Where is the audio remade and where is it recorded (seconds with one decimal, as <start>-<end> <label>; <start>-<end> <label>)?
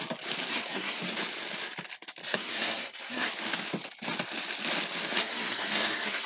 0.0-0.5 recorded; 0.5-1.0 remade; 1.0-2.2 recorded; 2.2-3.3 remade; 3.3-5.2 recorded; 5.2-6.3 remade